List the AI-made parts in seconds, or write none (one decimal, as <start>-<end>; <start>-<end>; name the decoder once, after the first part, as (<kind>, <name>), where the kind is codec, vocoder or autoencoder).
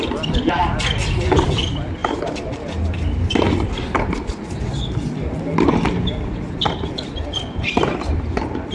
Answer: none